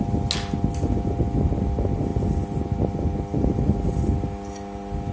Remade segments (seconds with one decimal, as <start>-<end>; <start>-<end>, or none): none